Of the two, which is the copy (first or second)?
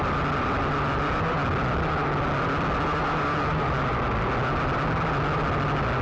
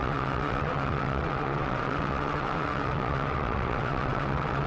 second